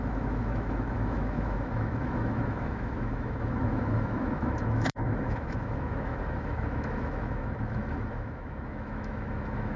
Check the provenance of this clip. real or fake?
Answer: fake